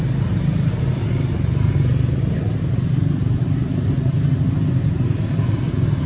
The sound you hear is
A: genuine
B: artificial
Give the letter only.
A